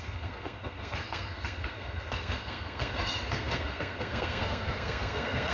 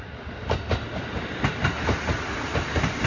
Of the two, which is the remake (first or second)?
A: first